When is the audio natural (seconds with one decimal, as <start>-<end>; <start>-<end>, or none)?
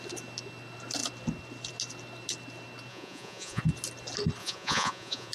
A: 0.0-2.9; 3.6-4.4